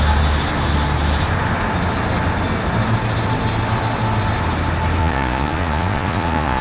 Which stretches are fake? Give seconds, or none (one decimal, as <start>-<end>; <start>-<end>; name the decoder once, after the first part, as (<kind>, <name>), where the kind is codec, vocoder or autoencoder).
5.0-6.6 (vocoder, Vocos)